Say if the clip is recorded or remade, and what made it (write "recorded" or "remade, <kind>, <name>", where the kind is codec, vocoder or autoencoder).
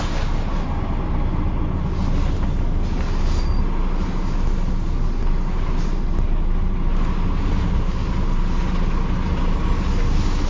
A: recorded